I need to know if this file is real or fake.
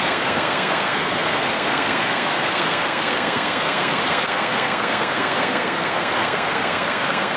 fake